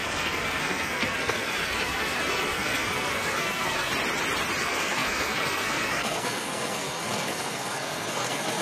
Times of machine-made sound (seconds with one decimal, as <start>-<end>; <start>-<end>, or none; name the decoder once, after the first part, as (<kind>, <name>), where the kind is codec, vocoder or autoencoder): 0.0-3.9 (codec, SNAC); 4.6-8.6